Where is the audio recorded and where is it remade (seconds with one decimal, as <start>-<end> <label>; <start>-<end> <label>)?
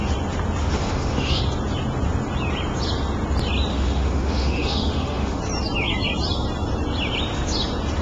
0.0-0.6 recorded; 0.6-1.4 remade; 1.4-3.7 recorded; 3.7-5.4 remade; 5.4-8.0 recorded